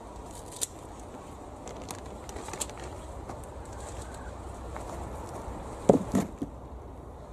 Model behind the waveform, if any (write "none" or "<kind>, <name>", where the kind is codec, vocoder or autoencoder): none